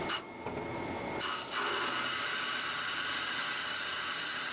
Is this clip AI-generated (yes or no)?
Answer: no